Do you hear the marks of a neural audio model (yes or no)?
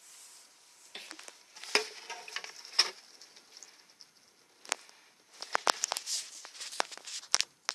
no